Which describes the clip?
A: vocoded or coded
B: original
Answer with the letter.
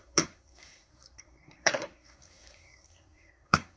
A